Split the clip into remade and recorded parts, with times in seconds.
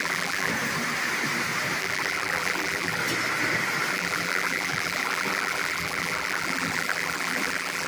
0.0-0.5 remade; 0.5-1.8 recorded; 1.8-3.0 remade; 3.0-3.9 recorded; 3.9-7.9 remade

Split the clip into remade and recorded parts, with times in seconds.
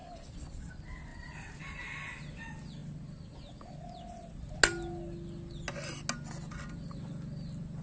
0.0-0.7 remade; 0.7-1.1 recorded; 1.1-1.6 remade; 1.6-7.8 recorded